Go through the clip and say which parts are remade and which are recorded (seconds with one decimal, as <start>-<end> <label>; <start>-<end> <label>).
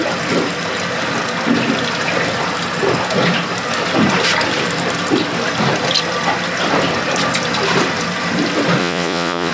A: 0.0-8.8 recorded; 8.8-9.5 remade